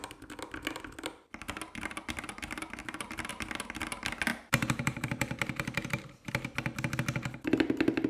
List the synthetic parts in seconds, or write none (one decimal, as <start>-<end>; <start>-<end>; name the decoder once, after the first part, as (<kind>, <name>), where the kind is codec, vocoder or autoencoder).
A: 2.8-3.3 (vocoder, BigVGAN v2); 4.3-6.3